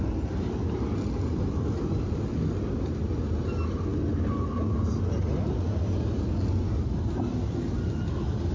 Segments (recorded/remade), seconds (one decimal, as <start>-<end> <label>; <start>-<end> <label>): 0.0-8.5 recorded